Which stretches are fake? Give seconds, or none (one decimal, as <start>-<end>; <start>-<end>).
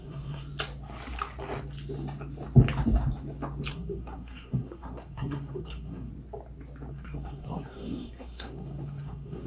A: 0.0-0.5; 3.7-6.1; 6.9-9.5